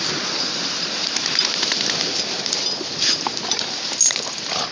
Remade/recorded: recorded